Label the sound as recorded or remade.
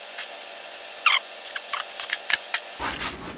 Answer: remade